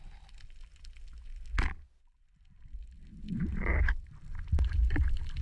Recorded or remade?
recorded